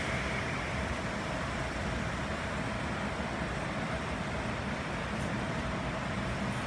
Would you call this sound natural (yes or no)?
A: no